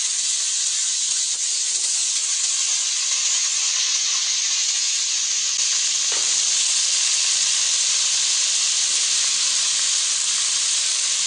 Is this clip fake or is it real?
real